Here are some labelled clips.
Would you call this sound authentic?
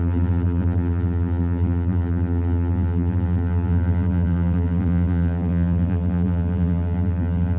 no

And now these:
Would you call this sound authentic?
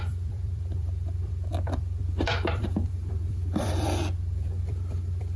no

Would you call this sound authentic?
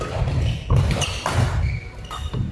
no